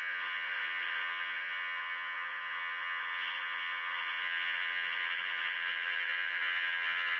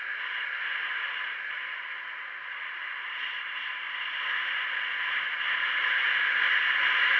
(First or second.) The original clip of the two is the second